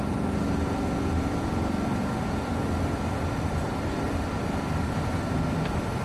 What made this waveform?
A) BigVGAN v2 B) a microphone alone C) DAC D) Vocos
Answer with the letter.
A